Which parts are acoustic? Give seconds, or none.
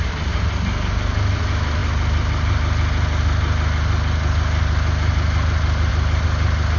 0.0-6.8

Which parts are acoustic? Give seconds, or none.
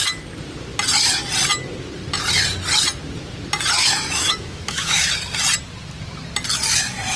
0.0-3.8; 5.1-7.2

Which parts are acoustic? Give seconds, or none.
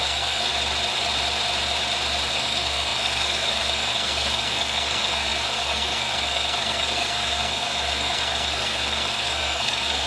0.5-2.3